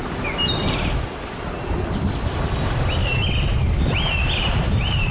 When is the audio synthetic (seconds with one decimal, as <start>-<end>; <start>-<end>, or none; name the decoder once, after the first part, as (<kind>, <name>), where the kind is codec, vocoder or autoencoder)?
3.0-5.1 (vocoder, BigVGAN v2)

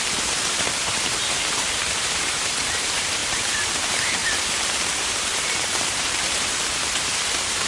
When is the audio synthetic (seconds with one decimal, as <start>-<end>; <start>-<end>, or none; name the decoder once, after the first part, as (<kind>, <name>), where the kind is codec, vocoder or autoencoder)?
0.0-4.2 (vocoder, BigVGAN v2); 5.0-7.7

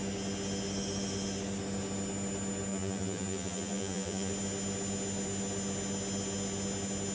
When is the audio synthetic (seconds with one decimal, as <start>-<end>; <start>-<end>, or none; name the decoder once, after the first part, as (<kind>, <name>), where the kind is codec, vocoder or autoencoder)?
2.7-4.3 (vocoder, BigVGAN v2)

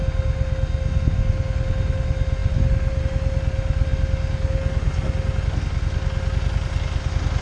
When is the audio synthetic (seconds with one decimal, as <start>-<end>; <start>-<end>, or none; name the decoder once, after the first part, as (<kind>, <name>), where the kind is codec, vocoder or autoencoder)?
none

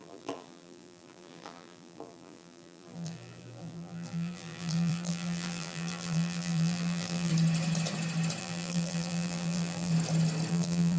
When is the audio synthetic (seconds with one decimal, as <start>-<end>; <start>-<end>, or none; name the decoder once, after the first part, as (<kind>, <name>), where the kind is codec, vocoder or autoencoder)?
0.0-7.3 (vocoder, BigVGAN v2); 8.4-9.9; 10.5-11.0

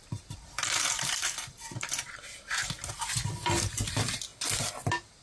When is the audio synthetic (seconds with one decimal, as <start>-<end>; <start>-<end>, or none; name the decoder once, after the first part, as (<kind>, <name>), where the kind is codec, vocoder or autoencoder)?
0.0-2.6 (vocoder, BigVGAN v2)

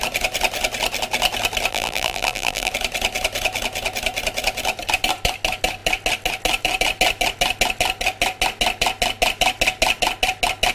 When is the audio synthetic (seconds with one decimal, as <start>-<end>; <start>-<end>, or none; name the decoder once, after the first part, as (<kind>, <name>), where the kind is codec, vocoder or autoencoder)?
1.7-2.7 (vocoder, BigVGAN v2)